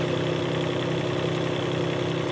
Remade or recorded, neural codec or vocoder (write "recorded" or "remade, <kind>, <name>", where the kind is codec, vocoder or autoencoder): recorded